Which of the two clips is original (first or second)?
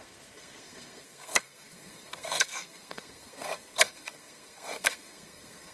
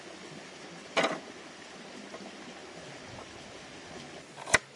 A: second